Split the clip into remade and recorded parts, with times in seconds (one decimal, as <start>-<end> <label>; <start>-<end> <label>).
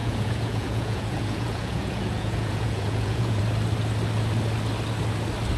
0.0-3.4 remade; 3.4-5.6 recorded